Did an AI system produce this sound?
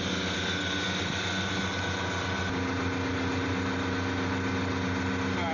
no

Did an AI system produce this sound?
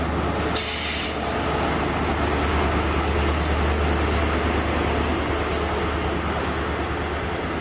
no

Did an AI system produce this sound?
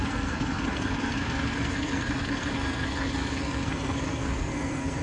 yes